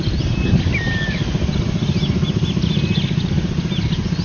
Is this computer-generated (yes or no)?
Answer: no